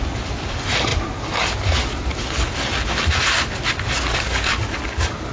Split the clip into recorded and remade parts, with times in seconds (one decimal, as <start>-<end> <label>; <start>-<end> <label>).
0.0-4.1 recorded; 4.1-4.7 remade; 4.7-5.3 recorded